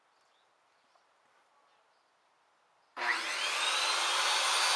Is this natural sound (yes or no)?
yes